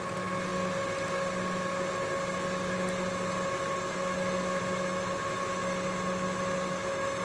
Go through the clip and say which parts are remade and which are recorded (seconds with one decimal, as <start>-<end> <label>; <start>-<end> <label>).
0.0-7.2 recorded